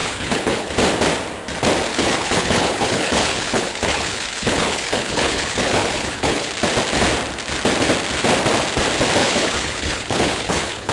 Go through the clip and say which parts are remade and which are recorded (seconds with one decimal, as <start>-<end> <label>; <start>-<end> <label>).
0.0-0.7 remade; 0.7-1.9 recorded; 1.9-6.5 remade; 6.5-9.2 recorded; 9.2-10.9 remade